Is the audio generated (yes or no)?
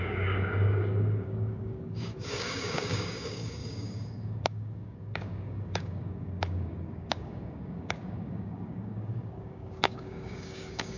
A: yes